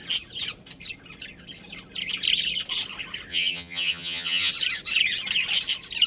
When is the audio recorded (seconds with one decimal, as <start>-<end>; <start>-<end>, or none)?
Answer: 0.0-3.3; 4.5-6.1